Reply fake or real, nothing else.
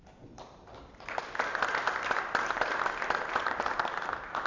fake